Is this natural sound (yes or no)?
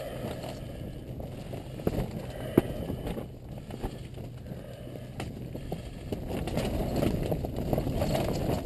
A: yes